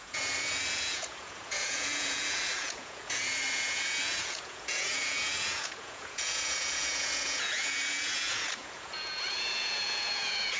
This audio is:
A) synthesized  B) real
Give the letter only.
A